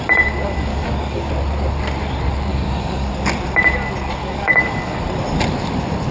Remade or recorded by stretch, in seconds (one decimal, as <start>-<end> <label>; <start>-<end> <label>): 0.0-0.7 recorded; 0.7-1.3 remade; 1.3-2.5 recorded; 2.5-3.1 remade; 3.1-4.2 recorded; 4.2-5.0 remade; 5.0-6.1 recorded